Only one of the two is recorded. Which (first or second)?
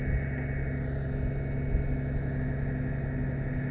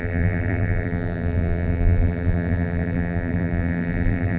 first